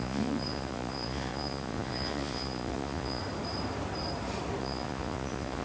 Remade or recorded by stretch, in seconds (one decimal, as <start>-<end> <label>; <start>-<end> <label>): 0.0-3.2 remade; 3.2-4.6 recorded; 4.6-5.6 remade